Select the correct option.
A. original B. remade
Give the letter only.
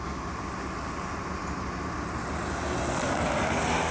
A